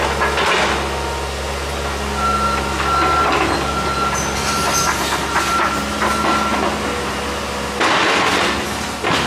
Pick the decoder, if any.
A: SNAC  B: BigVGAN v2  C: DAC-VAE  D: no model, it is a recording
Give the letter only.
D